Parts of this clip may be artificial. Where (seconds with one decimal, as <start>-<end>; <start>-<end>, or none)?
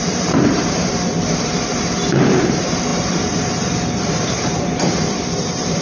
0.0-1.1; 1.7-5.8